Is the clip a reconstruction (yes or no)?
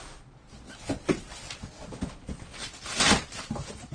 no